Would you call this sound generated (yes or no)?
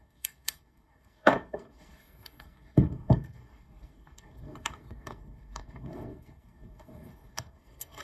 yes